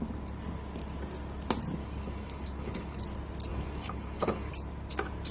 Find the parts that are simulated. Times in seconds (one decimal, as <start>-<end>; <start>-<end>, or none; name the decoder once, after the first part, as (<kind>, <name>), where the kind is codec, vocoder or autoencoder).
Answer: 1.8-3.0 (codec, DAC); 3.5-4.5